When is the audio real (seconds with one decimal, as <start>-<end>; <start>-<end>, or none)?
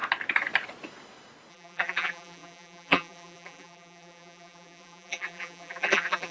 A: 0.0-1.5